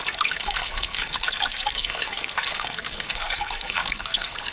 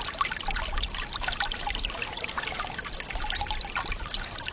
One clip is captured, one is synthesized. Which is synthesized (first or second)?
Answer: first